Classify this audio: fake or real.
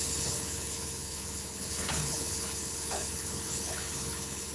fake